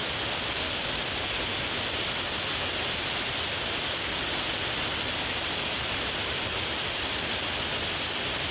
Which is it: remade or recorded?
recorded